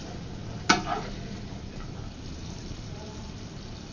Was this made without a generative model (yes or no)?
yes